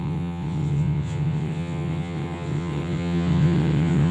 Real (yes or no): no